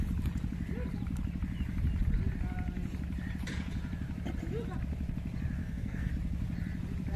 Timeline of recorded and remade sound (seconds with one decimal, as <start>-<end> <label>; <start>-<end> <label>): 0.0-5.6 recorded; 5.6-6.1 remade; 6.1-7.2 recorded